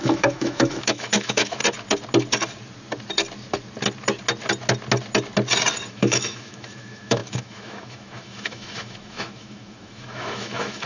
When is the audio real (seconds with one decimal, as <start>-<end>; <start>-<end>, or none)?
1.6-5.9